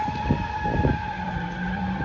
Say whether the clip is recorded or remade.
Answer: remade